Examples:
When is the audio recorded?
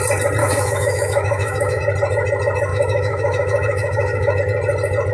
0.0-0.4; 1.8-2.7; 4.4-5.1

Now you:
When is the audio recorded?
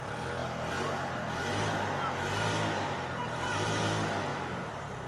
0.0-4.3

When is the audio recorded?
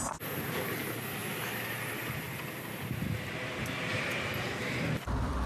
0.0-5.5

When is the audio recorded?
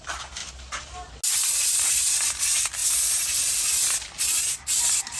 0.0-5.2